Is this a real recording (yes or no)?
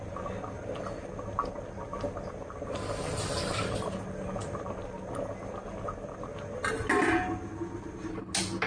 yes